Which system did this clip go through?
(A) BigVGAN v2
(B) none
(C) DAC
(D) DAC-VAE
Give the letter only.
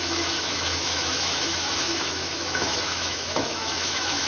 D